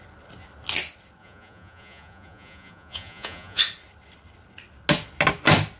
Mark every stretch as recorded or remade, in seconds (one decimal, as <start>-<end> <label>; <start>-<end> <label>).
0.0-1.2 recorded; 1.2-3.6 remade; 3.6-5.8 recorded